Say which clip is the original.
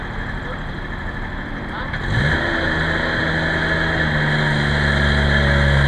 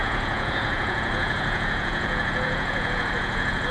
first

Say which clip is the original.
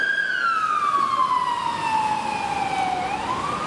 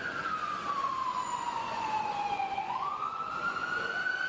first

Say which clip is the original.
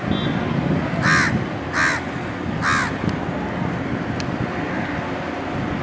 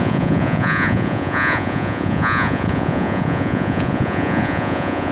first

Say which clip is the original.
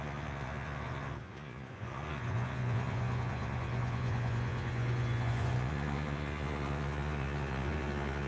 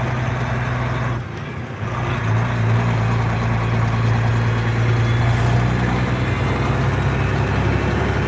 second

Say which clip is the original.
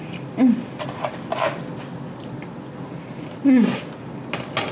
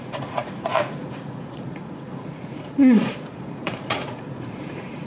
first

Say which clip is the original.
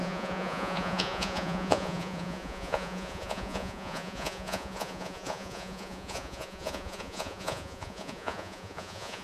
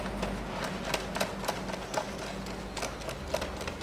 second